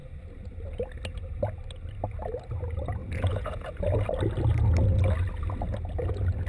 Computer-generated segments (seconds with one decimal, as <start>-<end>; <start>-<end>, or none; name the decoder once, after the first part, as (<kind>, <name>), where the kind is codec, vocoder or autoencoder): 3.0-3.7 (vocoder, Vocos)